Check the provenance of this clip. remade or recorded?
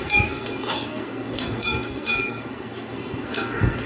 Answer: remade